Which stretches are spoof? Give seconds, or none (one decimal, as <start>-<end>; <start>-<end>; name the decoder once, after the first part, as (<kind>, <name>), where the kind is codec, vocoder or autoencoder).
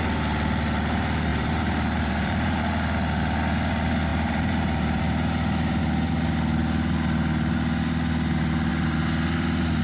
1.3-2.6 (vocoder, BigVGAN v2); 4.1-5.8